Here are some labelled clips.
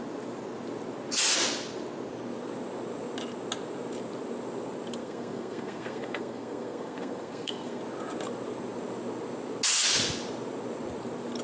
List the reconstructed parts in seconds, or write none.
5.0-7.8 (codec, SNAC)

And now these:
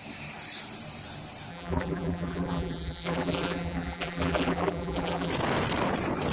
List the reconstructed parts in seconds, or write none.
1.5-5.3 (vocoder, BigVGAN v2)

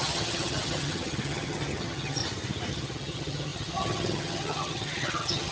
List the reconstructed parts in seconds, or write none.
0.0-2.2 (vocoder, HiFi-GAN); 2.7-5.5

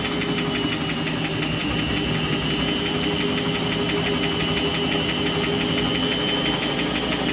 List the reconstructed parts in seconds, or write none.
none

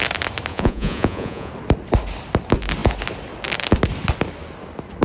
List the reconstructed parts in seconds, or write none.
0.5-1.5 (vocoder, Vocos)

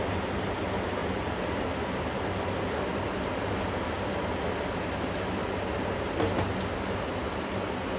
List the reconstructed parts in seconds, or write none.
none